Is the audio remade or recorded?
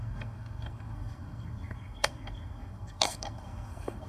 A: remade